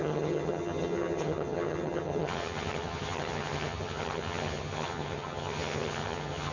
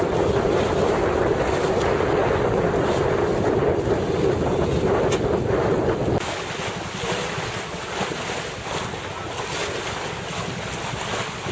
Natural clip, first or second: second